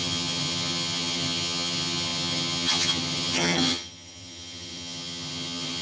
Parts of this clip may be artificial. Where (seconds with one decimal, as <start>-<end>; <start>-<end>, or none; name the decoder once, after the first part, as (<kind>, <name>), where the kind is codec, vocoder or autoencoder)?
0.0-5.8 (vocoder, HiFi-GAN)